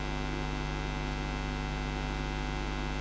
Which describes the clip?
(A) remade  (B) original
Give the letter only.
B